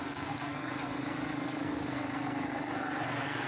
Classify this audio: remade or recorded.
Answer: remade